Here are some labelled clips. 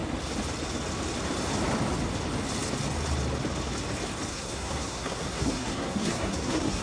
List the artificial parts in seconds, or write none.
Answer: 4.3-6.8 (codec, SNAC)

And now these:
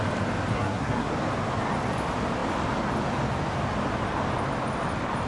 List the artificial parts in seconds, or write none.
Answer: 0.5-1.1 (codec, SNAC)

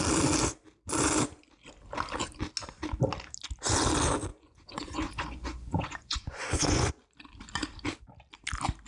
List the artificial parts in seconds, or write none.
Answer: 4.3-6.9 (vocoder, Vocos)